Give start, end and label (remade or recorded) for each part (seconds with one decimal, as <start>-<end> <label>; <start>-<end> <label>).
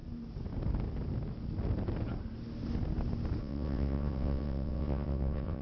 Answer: 0.0-3.4 recorded; 3.4-5.6 remade